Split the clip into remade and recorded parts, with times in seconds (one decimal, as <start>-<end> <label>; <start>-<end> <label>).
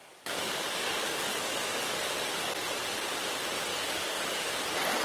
0.0-3.0 remade; 3.0-3.7 recorded; 3.7-4.5 remade; 4.5-5.0 recorded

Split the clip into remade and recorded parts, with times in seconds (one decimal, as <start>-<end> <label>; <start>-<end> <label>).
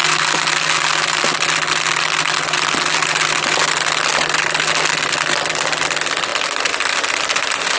0.0-7.8 recorded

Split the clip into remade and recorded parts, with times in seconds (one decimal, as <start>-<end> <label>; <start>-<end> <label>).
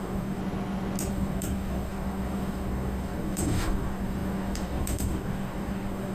0.0-0.4 remade; 0.4-1.1 recorded; 1.1-6.1 remade